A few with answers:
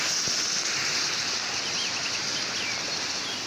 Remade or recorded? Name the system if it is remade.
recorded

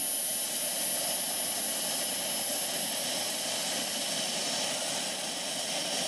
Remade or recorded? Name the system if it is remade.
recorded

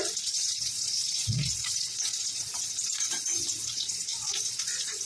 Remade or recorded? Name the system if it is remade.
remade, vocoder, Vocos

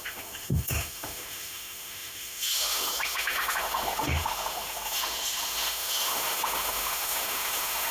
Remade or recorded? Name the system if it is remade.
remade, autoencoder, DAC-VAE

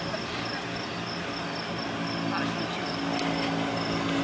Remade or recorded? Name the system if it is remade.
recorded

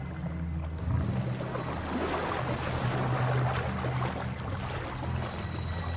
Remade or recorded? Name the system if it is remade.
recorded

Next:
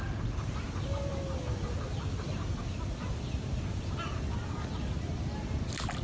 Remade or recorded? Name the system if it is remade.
recorded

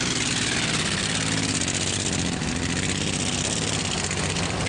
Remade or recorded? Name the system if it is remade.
recorded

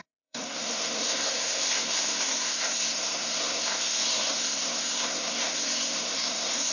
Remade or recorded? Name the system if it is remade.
remade, codec, SNAC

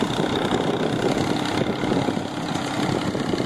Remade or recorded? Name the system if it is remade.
recorded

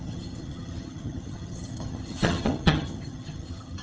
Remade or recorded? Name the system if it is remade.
remade, vocoder, HiFi-GAN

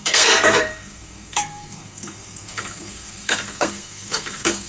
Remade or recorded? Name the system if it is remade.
remade, codec, SNAC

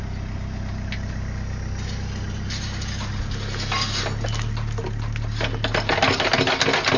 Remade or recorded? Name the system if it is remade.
recorded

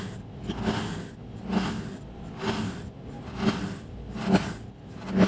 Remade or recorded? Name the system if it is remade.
recorded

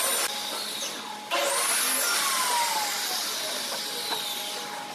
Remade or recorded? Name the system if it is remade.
recorded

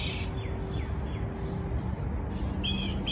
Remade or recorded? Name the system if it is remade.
recorded